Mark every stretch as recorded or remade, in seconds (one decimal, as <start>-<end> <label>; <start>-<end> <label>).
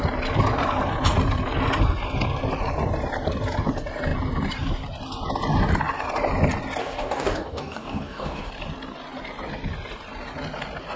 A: 0.0-6.8 recorded; 6.8-8.5 remade; 8.5-11.0 recorded